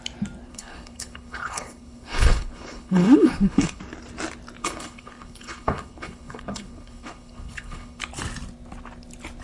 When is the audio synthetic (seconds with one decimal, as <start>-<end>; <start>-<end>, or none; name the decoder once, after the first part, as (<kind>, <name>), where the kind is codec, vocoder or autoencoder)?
0.5-3.8 (codec, HILCodec); 4.6-8.0